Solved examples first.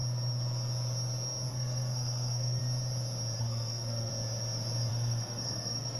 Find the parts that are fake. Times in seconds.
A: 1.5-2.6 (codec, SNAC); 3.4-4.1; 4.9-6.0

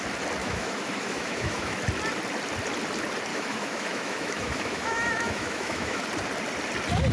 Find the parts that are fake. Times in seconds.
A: 0.4-1.8 (autoencoder, DAC-VAE); 3.3-6.0

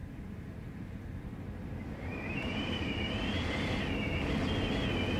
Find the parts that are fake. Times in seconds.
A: 2.1-3.8 (vocoder, BigVGAN v2)